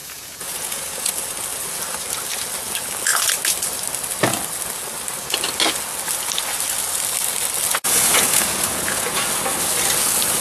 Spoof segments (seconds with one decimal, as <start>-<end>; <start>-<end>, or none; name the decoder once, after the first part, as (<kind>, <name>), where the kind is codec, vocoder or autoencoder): 0.0-1.1 (vocoder, Vocos); 7.7-9.3